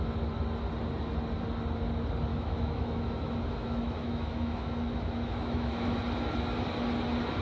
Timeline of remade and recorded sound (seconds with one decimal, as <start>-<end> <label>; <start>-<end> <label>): 0.0-2.3 recorded; 2.3-6.0 remade; 6.0-7.4 recorded